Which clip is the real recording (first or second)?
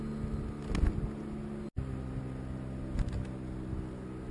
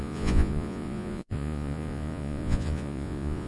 first